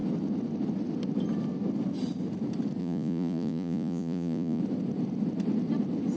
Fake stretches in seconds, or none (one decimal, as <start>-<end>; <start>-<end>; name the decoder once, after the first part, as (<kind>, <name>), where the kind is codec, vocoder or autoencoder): 2.8-4.6 (vocoder, Vocos)